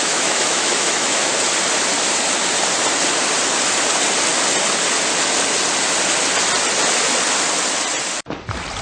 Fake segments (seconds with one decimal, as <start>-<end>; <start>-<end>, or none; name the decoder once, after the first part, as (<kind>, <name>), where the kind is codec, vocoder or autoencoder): 0.0-1.3 (autoencoder, DAC-VAE)